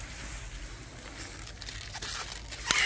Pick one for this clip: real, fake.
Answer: real